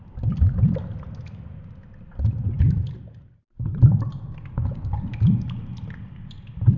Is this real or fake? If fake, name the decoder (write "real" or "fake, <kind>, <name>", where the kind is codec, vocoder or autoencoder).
real